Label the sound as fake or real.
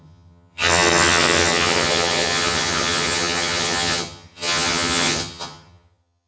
fake